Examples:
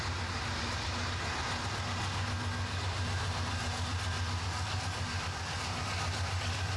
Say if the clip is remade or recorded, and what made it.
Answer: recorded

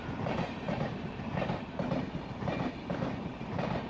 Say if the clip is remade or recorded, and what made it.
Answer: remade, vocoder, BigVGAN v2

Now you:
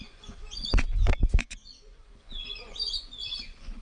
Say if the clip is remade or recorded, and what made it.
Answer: remade, vocoder, Vocos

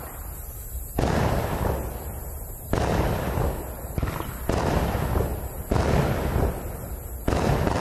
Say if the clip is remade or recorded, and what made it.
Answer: recorded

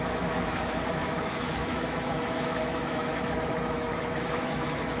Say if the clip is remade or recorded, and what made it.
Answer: remade, autoencoder, DAC-VAE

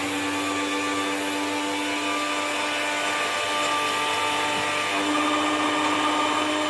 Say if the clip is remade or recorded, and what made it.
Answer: recorded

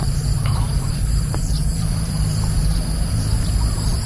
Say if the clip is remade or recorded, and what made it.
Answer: remade, vocoder, BigVGAN v2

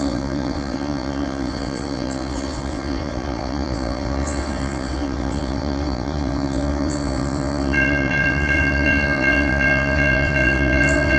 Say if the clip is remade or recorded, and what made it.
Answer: remade, vocoder, WaveNeXt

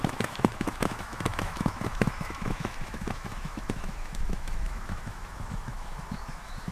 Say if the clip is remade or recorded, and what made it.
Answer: remade, autoencoder, DAC-VAE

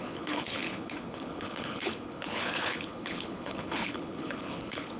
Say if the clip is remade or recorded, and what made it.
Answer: remade, codec, HILCodec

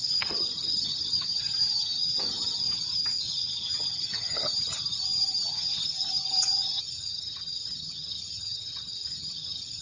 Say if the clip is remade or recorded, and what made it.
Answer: remade, vocoder, HiFi-GAN